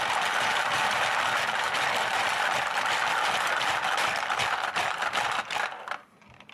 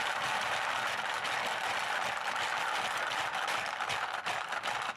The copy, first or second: first